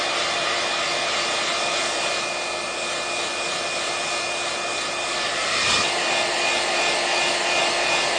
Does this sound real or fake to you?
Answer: real